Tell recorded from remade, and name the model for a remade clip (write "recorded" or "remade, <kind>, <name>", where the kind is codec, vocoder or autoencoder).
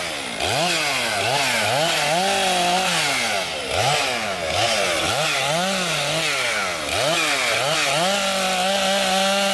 recorded